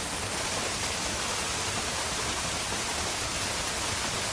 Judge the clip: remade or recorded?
recorded